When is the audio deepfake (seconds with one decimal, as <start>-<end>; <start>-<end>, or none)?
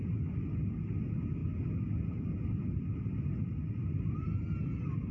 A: none